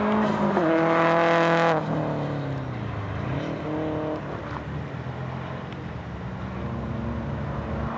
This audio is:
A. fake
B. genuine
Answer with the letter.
B